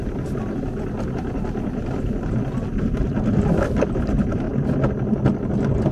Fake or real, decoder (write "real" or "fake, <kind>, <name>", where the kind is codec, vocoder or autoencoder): real